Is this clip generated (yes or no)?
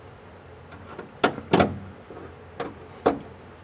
no